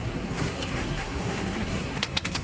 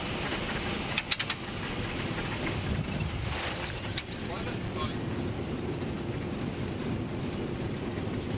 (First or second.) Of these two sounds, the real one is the second